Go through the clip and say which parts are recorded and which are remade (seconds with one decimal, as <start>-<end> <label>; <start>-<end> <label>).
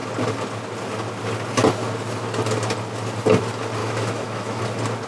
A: 0.0-3.8 recorded; 3.8-4.6 remade; 4.6-5.1 recorded